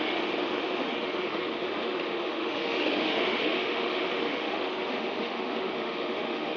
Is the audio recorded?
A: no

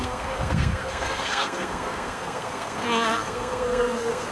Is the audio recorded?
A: no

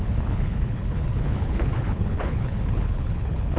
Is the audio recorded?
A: no